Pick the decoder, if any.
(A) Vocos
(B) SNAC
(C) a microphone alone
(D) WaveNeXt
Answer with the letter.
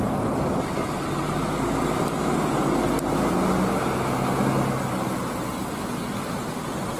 C